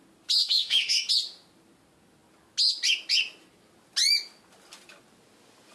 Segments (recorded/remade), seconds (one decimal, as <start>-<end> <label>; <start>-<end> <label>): 0.0-0.4 recorded; 0.4-1.1 remade; 1.1-5.7 recorded